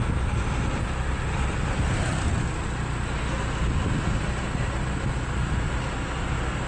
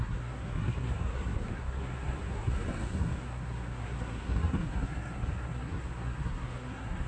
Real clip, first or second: first